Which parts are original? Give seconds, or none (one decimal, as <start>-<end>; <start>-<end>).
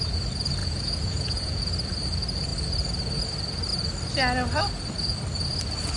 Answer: 0.0-0.6; 1.7-6.0